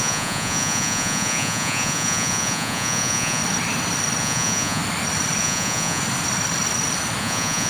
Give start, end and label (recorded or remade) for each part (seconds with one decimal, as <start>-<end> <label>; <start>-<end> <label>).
0.0-3.4 remade; 3.4-4.2 recorded; 4.2-4.8 remade; 4.8-5.4 recorded; 5.4-6.0 remade; 6.0-7.2 recorded; 7.2-7.7 remade

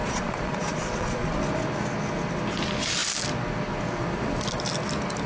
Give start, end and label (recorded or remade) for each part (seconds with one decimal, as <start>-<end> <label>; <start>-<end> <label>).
0.0-1.4 remade; 1.4-5.3 recorded

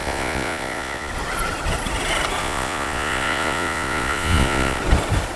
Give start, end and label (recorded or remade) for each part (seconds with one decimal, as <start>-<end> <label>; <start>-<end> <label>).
0.0-1.1 remade; 1.1-2.4 recorded; 2.4-4.8 remade; 4.8-5.4 recorded

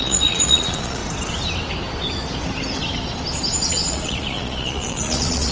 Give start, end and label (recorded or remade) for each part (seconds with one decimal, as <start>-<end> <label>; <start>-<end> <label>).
0.0-1.0 remade; 1.0-3.7 recorded; 3.7-5.5 remade

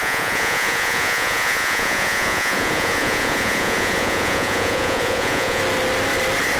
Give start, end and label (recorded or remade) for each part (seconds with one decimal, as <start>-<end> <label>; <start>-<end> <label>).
0.0-5.6 remade; 5.6-6.6 recorded

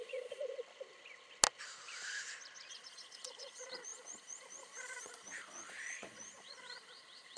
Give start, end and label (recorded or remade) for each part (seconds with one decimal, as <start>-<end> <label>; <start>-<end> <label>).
0.0-0.4 remade; 0.4-2.7 recorded; 2.7-7.4 remade

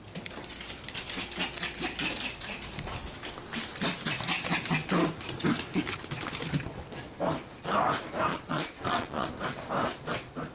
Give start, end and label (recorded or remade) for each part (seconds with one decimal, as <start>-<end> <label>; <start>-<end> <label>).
0.0-8.3 recorded; 8.3-9.3 remade; 9.3-10.5 recorded

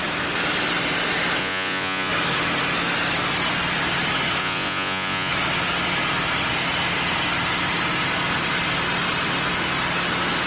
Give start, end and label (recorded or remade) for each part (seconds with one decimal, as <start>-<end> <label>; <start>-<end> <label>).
0.0-1.4 recorded; 1.4-2.1 remade; 2.1-4.4 recorded; 4.4-5.3 remade; 5.3-10.5 recorded